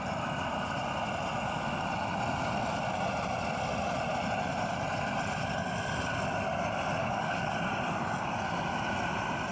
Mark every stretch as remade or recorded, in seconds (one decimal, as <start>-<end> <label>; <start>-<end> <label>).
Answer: 0.0-7.0 recorded; 7.0-7.5 remade; 7.5-9.5 recorded